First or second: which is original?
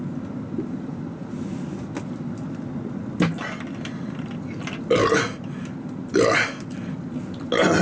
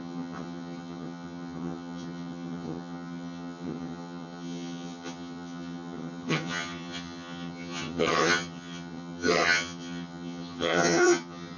first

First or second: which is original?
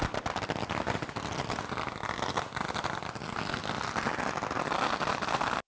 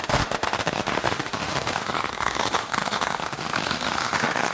first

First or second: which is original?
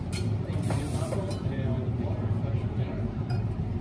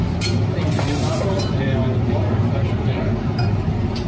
second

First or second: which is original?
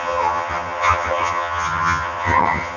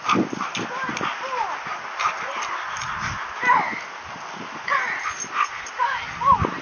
second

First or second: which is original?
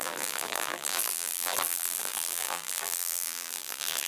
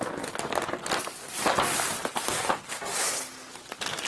second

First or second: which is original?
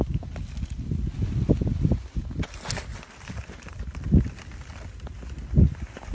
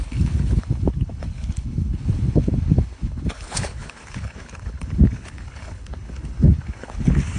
first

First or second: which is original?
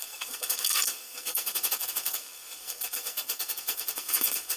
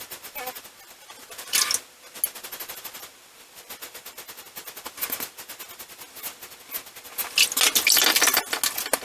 second